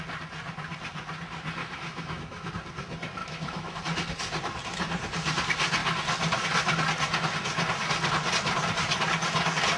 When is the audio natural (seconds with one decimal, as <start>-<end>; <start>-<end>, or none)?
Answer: 0.0-1.6; 2.5-3.2; 3.8-9.8